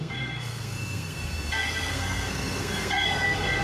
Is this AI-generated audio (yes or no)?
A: yes